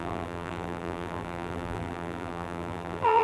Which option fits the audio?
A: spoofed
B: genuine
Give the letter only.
A